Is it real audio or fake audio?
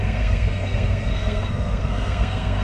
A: fake